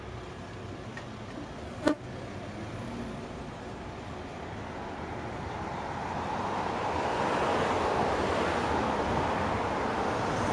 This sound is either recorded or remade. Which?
recorded